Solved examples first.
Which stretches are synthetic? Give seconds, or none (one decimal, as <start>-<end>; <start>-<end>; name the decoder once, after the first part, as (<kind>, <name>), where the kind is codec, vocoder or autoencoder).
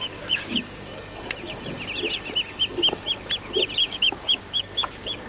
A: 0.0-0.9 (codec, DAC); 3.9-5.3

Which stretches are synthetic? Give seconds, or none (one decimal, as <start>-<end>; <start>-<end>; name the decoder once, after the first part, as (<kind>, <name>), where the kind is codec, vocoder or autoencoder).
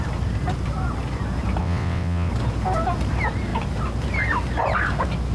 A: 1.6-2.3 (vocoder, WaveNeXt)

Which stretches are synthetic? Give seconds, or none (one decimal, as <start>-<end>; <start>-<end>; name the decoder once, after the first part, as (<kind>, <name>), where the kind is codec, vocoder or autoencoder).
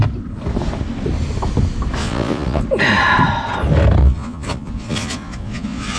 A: 2.0-2.6 (vocoder, Vocos); 4.0-6.0